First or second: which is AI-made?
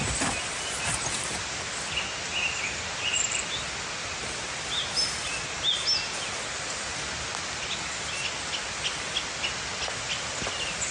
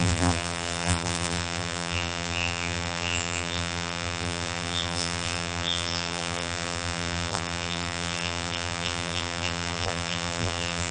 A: second